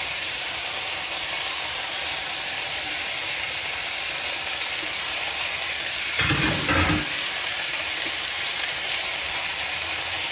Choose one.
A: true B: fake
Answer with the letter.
B